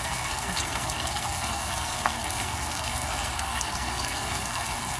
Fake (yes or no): yes